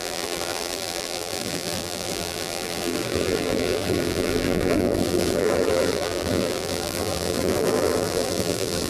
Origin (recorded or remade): remade